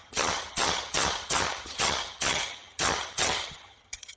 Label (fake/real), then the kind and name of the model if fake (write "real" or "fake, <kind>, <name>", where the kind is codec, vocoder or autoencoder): fake, vocoder, HiFi-GAN